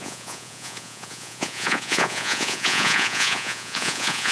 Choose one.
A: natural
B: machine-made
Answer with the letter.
B